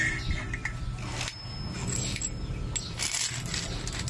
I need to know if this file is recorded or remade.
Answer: recorded